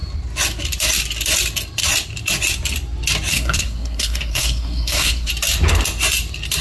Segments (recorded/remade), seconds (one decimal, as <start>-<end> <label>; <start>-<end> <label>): 0.0-3.3 recorded; 3.3-5.3 remade; 5.3-6.6 recorded